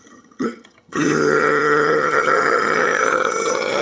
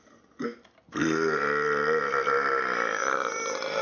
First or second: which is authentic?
second